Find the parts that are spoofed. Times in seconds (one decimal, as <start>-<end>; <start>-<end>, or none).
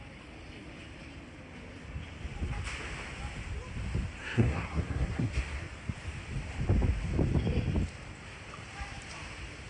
4.2-5.7